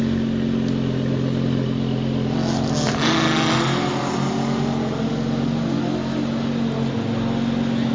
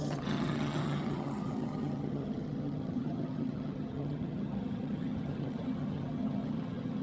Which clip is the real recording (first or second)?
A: first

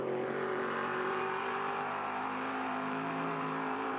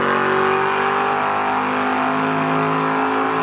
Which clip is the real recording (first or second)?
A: second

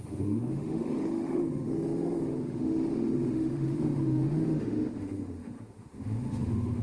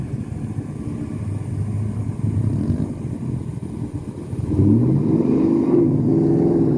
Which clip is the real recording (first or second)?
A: second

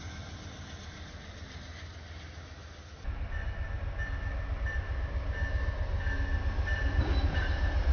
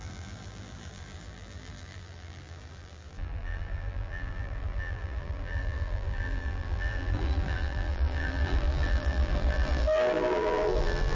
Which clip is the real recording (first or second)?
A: first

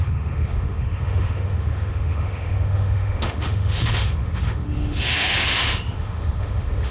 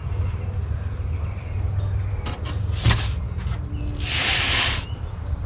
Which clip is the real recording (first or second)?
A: second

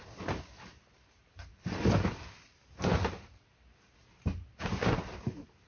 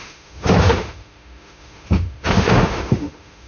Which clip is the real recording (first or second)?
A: first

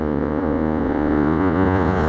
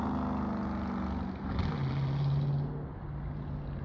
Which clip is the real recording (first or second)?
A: second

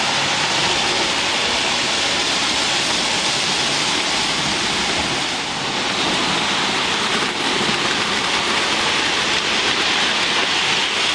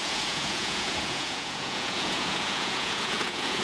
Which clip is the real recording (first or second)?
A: first